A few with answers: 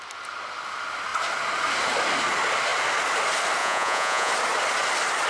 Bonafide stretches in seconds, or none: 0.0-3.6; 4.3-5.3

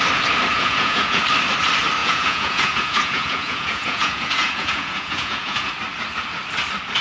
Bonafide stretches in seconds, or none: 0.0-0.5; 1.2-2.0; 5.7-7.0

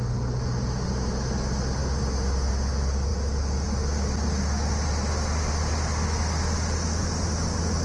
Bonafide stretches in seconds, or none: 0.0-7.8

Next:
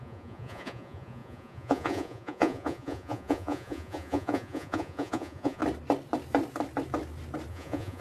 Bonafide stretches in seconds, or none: 5.6-7.5

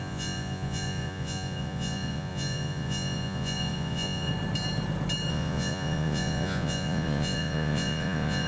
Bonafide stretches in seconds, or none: 4.3-5.3

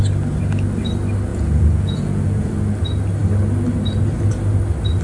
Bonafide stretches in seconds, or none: 0.0-1.3; 2.5-5.0